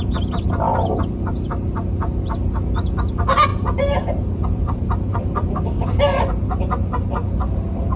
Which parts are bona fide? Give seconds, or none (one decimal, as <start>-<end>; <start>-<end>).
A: 0.0-3.5; 5.5-8.0